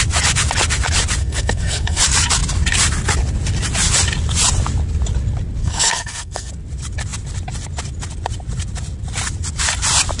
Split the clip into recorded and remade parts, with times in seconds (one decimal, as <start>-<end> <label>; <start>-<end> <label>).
0.0-1.2 recorded; 1.2-2.0 remade; 2.0-5.6 recorded; 5.6-6.5 remade; 6.5-10.2 recorded